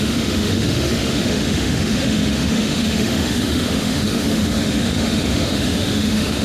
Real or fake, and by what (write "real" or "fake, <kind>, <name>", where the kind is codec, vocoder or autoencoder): fake, autoencoder, DAC-VAE